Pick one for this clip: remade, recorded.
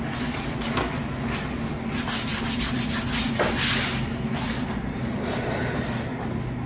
recorded